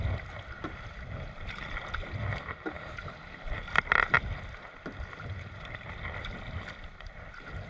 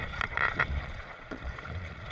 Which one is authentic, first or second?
first